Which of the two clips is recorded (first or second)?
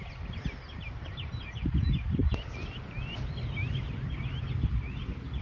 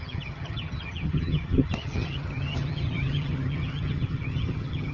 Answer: first